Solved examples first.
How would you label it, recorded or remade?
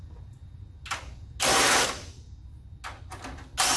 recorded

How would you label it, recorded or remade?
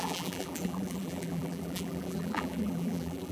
remade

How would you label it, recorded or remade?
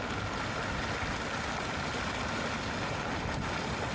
recorded